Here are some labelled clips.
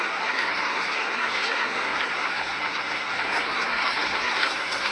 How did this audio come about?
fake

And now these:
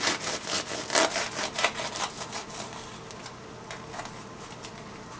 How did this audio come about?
real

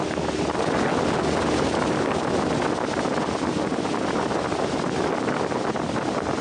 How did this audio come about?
real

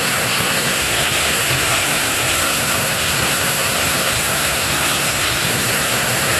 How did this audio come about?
fake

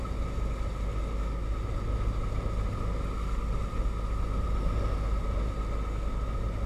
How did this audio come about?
real